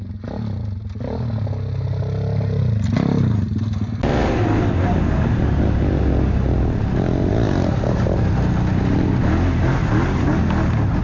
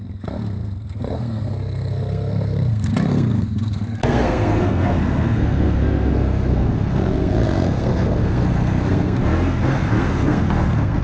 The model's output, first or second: second